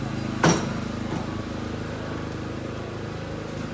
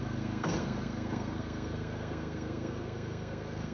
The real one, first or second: first